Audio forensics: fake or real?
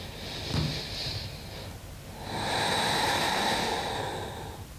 real